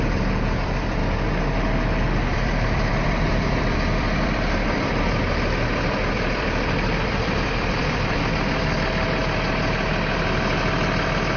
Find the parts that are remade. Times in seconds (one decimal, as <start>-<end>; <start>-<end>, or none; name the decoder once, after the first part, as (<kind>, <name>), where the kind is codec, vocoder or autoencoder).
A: 0.0-1.0 (vocoder, BigVGAN v2); 2.3-9.2